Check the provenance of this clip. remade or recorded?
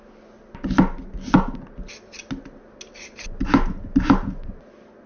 recorded